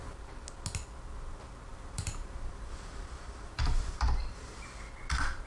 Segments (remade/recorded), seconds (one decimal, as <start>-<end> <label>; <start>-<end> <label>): 0.0-1.7 recorded; 1.7-4.6 remade; 4.6-5.5 recorded